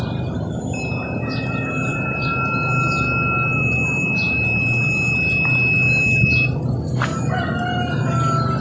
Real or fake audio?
real